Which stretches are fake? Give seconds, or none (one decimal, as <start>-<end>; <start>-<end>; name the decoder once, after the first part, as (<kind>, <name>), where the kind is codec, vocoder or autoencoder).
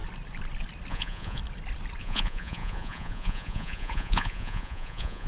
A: 0.9-1.4 (vocoder, Vocos); 2.0-5.3